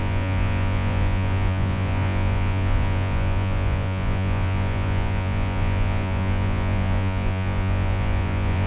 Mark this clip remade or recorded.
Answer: remade